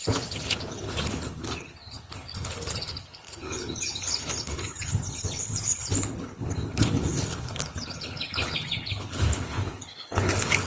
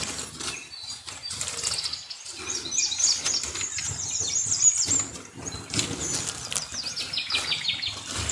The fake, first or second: first